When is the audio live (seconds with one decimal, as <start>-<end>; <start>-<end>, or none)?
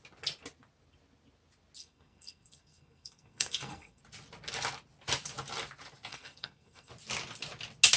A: 0.0-1.8; 4.0-6.1; 6.9-8.0